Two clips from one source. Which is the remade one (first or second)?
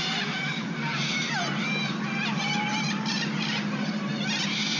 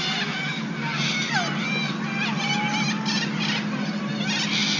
first